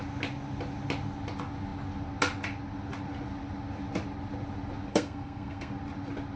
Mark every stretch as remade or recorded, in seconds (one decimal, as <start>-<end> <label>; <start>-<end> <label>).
0.0-4.9 recorded; 4.9-5.7 remade; 5.7-6.4 recorded